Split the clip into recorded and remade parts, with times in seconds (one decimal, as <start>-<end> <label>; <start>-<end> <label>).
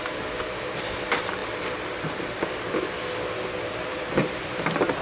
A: 0.0-3.9 recorded; 3.9-5.0 remade